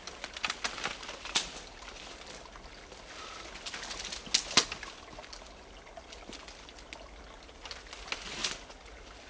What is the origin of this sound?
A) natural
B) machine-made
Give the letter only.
A